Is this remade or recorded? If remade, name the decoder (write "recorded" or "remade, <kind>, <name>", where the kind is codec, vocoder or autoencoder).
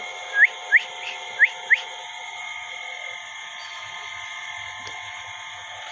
recorded